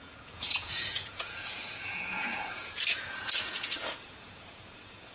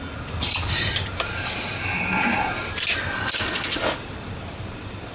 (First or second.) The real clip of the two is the second